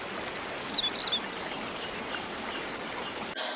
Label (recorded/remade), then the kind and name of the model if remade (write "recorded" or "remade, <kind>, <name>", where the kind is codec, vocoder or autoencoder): recorded